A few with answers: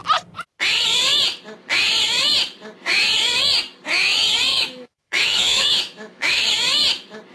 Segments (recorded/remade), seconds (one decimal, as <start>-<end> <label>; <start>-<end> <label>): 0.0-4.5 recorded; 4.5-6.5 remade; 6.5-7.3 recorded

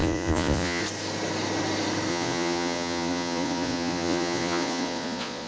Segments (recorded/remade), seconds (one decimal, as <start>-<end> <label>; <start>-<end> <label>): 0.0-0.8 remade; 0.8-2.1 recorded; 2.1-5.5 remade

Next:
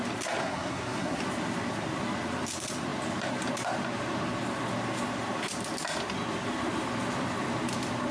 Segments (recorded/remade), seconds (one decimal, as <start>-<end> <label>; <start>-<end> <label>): 0.0-0.4 recorded; 0.4-1.2 remade; 1.2-8.1 recorded

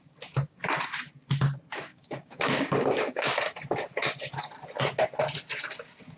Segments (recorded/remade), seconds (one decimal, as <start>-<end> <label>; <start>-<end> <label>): 0.0-1.9 recorded; 1.9-3.3 remade; 3.3-6.2 recorded

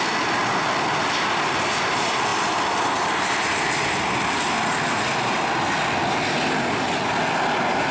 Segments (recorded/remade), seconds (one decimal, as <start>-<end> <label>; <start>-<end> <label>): 0.0-7.9 recorded

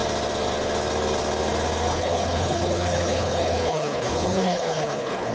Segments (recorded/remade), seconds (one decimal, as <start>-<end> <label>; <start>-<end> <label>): 0.0-1.9 recorded; 1.9-5.3 remade

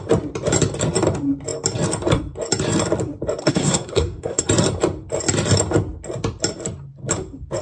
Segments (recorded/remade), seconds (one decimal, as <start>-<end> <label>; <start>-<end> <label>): 0.0-3.4 recorded; 3.4-4.4 remade; 4.4-7.6 recorded

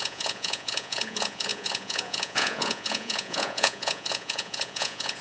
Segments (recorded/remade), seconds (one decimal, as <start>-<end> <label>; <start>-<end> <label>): 0.0-5.2 remade